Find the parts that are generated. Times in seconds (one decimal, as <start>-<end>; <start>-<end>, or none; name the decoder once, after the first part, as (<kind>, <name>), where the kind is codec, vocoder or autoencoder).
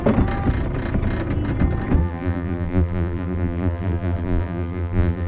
2.0-5.3 (vocoder, BigVGAN v2)